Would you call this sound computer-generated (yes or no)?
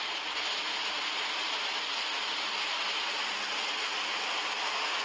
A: no